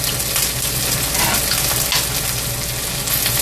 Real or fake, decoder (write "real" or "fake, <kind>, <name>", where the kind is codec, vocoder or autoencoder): real